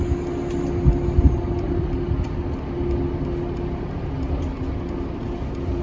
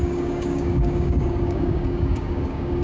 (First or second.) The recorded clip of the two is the first